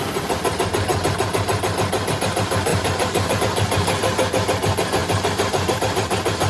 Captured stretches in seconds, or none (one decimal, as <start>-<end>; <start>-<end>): 0.0-2.7; 3.4-5.0; 5.8-6.5